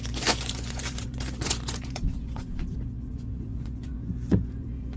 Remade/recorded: remade